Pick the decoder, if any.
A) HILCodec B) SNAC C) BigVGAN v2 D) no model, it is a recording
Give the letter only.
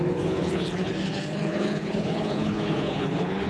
A